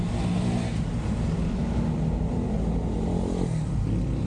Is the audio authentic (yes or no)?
yes